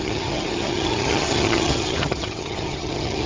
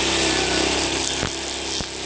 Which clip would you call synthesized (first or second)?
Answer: first